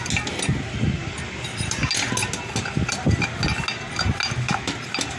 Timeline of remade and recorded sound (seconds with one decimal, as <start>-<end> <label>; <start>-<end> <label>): 0.0-1.0 recorded; 1.0-1.7 remade; 1.7-5.2 recorded